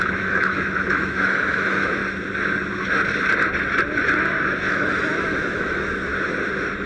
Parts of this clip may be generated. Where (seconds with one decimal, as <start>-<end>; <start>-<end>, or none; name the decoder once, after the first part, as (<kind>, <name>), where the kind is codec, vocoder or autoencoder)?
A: 0.0-2.0 (autoencoder, DAC-VAE); 4.7-6.1